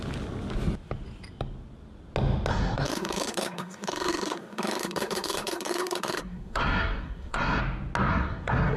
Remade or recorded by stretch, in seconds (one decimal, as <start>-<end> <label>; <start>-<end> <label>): 0.0-2.5 recorded; 2.5-7.6 remade; 7.6-8.1 recorded; 8.1-8.8 remade

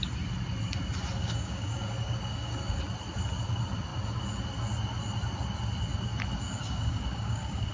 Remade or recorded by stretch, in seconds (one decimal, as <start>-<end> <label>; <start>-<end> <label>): 0.0-1.2 recorded; 1.2-2.8 remade; 2.8-6.6 recorded; 6.6-7.7 remade

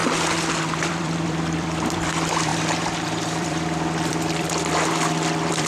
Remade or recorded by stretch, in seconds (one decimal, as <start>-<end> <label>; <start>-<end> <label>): 0.0-0.6 recorded; 0.6-5.7 remade